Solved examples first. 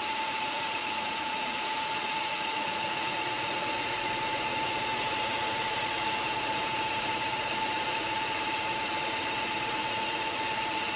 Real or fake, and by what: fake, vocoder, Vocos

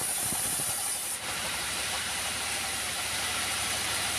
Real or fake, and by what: fake, vocoder, BigVGAN v2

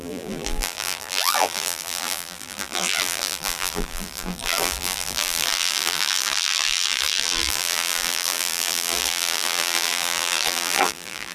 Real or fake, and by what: fake, vocoder, BigVGAN v2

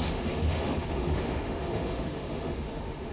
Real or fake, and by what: fake, autoencoder, DAC-VAE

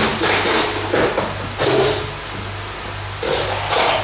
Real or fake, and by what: real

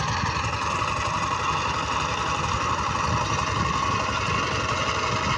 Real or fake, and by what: real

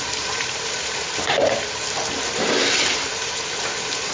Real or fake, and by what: fake, vocoder, BigVGAN v2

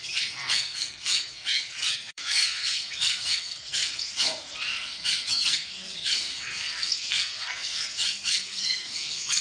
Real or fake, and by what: fake, codec, SNAC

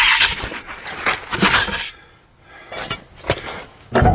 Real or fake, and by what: real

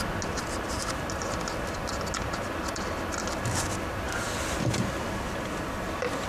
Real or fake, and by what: real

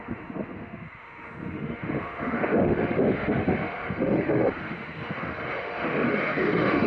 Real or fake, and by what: fake, autoencoder, DAC-VAE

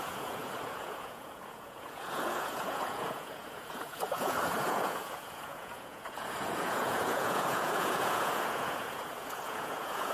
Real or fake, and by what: fake, vocoder, Vocos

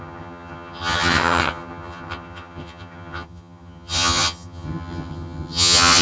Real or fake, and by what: fake, vocoder, HiFi-GAN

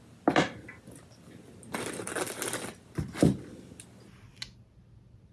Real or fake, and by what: real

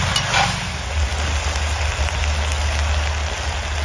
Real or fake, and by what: real